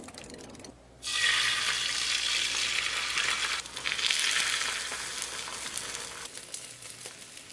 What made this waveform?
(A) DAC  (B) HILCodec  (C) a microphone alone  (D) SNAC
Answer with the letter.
C